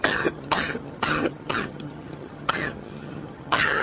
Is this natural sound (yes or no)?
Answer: no